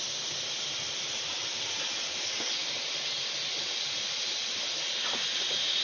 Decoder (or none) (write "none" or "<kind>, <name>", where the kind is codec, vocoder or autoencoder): none